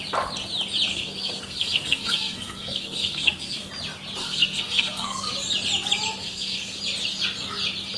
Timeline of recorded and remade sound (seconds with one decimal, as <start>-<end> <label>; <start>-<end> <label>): 0.0-0.9 recorded; 0.9-3.7 remade; 3.7-4.2 recorded; 4.2-5.3 remade; 5.3-6.2 recorded; 6.2-6.8 remade; 6.8-8.0 recorded